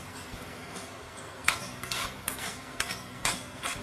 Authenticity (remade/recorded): remade